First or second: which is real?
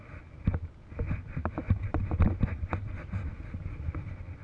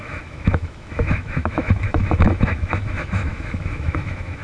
first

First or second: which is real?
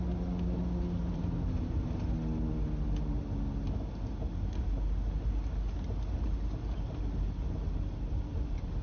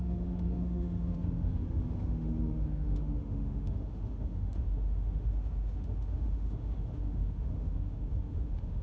first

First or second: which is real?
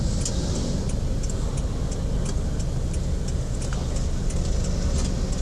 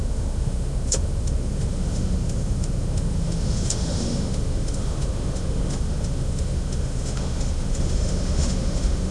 first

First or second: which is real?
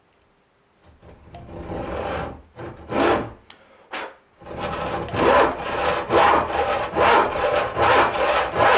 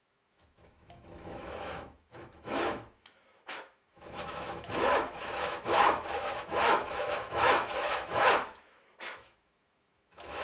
first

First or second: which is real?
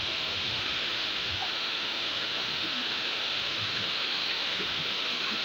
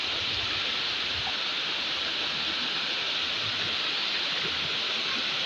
second